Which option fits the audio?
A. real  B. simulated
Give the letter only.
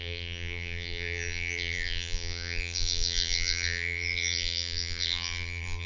B